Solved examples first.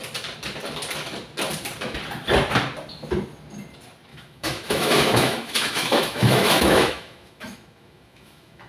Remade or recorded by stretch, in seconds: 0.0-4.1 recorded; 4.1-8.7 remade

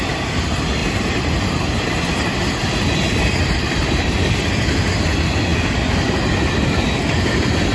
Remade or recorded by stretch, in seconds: 0.0-0.8 recorded; 0.8-4.5 remade; 4.5-7.7 recorded

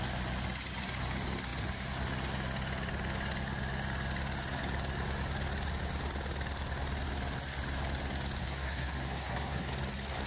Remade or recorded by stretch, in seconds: 0.0-8.4 recorded; 8.4-9.7 remade; 9.7-10.3 recorded